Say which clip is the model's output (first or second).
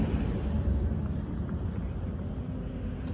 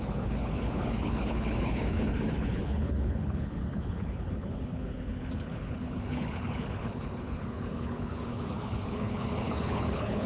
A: second